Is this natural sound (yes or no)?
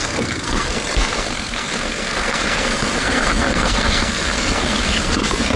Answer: no